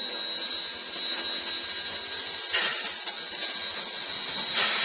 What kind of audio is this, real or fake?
real